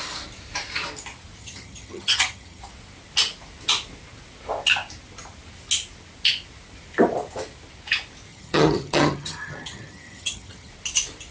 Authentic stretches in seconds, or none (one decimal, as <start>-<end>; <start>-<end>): 0.0-1.4; 2.6-8.3; 10.7-11.3